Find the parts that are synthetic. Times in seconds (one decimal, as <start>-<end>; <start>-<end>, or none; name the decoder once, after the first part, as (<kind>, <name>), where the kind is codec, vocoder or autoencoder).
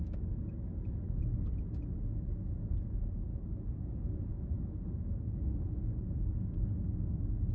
0.0-1.2 (codec, DAC); 2.7-3.3; 4.3-7.5